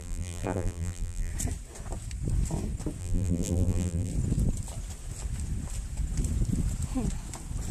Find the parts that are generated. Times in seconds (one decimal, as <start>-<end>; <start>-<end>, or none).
0.0-1.3; 3.0-4.1